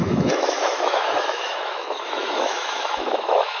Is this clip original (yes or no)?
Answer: no